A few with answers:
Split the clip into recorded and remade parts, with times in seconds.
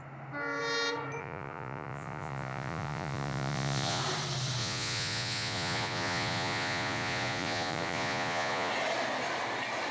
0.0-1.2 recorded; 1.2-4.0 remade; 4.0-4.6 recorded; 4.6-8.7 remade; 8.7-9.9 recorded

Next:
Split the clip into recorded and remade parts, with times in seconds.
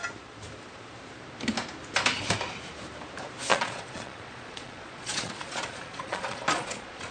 0.0-3.5 recorded; 3.5-7.1 remade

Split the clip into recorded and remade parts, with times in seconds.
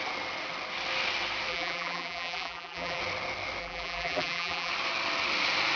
0.0-1.5 recorded; 1.5-3.0 remade; 3.0-3.6 recorded; 3.6-4.7 remade; 4.7-5.8 recorded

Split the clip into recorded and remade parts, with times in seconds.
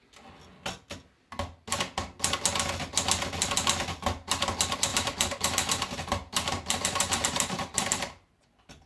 0.0-4.9 recorded; 4.9-8.4 remade; 8.4-8.9 recorded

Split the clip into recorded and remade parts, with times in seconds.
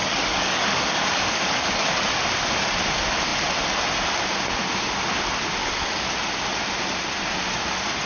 0.0-1.9 remade; 1.9-5.6 recorded; 5.6-6.1 remade; 6.1-8.1 recorded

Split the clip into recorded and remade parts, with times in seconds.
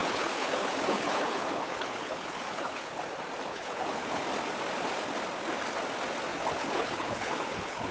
0.0-3.0 remade; 3.0-3.5 recorded; 3.5-4.2 remade; 4.2-6.3 recorded; 6.3-7.9 remade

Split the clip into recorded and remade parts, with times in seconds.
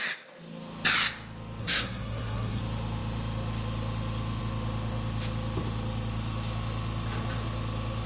0.0-1.6 recorded; 1.6-2.6 remade; 2.6-8.1 recorded